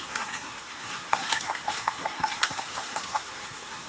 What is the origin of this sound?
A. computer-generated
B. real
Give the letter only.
A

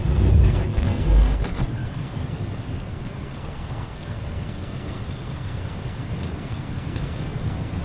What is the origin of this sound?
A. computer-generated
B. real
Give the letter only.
A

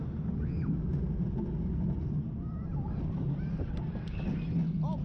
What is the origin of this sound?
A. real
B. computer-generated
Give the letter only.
A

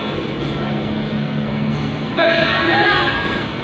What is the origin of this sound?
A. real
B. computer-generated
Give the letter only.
B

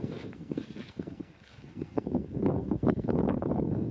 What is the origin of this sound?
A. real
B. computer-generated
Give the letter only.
B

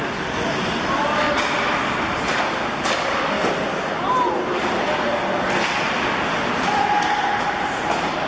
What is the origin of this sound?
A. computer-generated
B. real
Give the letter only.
B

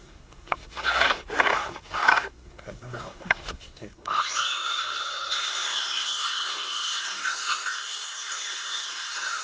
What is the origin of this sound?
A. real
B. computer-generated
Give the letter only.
B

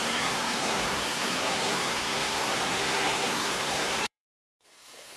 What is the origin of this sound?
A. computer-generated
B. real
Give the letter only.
A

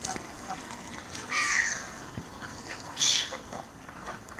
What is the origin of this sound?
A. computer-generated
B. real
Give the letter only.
A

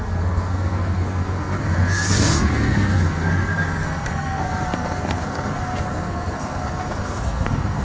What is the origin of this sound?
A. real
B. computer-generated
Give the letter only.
B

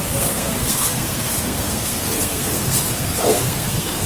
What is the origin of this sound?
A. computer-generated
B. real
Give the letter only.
A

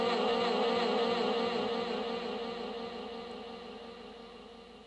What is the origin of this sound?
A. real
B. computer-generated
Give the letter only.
A